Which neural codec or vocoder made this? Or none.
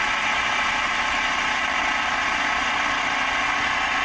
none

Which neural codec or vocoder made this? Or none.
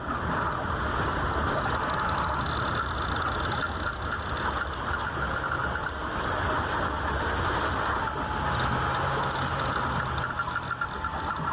none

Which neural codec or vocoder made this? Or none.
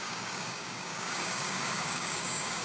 codec, DAC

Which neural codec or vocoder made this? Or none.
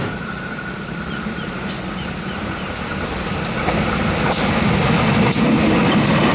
none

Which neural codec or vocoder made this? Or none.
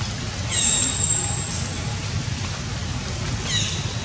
none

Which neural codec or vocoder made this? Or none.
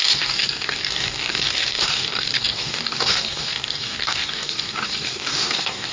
codec, DAC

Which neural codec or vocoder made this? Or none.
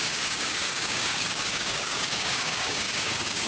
codec, DAC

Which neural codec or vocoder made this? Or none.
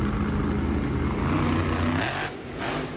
none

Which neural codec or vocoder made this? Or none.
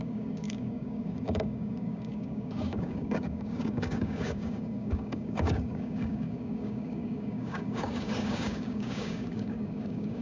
codec, DAC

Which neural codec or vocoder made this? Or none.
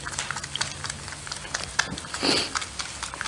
none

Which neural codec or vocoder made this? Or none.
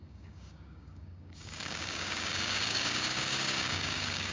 codec, DAC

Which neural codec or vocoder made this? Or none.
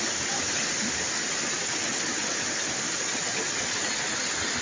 none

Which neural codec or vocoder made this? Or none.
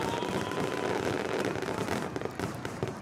none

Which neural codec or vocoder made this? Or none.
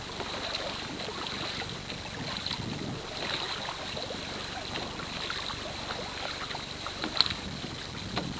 none